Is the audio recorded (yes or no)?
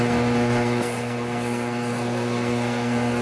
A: no